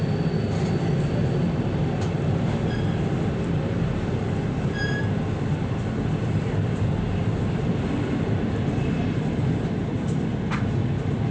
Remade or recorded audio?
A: recorded